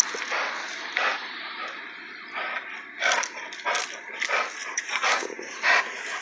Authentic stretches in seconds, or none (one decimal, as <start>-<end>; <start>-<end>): 0.0-4.6; 5.8-6.2